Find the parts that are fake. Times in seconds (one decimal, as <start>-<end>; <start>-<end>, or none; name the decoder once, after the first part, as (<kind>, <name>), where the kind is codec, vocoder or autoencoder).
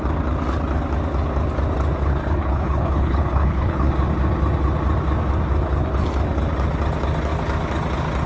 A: 2.1-3.9 (codec, HILCodec)